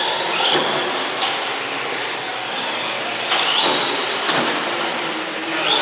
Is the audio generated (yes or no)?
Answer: no